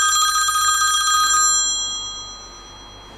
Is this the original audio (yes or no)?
yes